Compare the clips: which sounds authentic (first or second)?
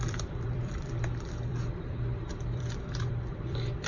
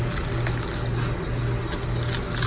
second